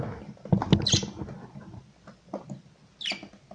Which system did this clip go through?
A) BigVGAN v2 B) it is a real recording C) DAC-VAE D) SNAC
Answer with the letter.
B